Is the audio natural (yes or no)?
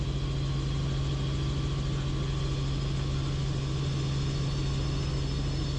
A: yes